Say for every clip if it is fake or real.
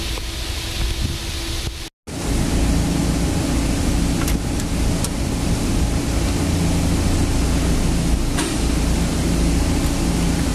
real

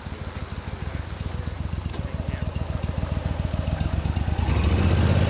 real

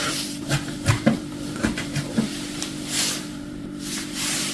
fake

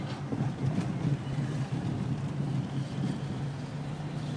real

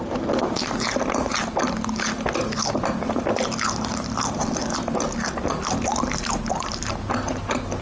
real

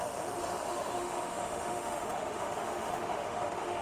fake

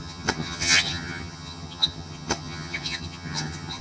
fake